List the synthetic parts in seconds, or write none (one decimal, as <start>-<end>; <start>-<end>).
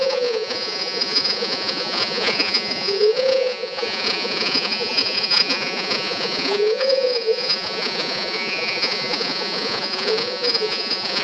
0.0-11.2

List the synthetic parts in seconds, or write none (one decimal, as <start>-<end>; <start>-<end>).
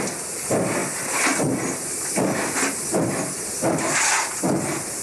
none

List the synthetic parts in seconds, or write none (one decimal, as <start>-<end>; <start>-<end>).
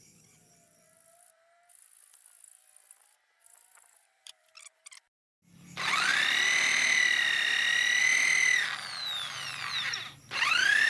0.0-6.1; 8.0-10.9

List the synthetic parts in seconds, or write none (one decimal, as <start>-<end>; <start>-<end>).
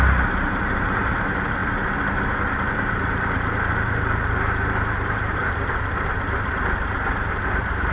0.0-5.4; 7.2-7.9